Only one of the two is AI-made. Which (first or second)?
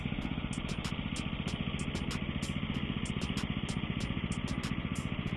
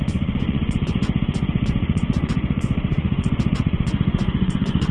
second